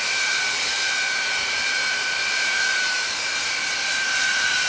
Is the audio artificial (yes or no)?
yes